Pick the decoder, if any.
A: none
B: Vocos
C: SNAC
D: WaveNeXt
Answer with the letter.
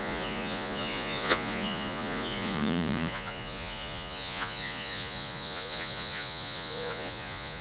B